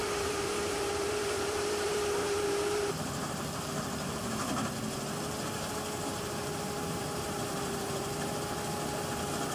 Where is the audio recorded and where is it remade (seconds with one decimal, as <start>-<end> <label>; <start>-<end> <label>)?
0.0-4.4 remade; 4.4-6.1 recorded; 6.1-8.3 remade; 8.3-9.5 recorded